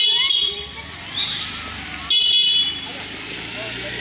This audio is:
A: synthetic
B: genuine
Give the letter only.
B